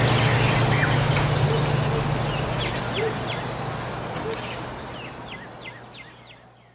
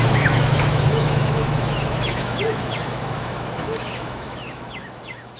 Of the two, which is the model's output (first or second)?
second